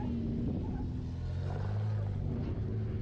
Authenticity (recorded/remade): recorded